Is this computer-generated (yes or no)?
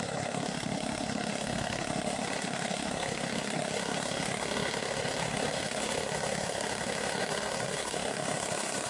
yes